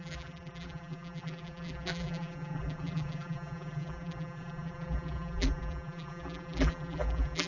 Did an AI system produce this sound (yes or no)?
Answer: yes